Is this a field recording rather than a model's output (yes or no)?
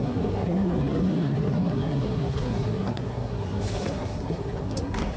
no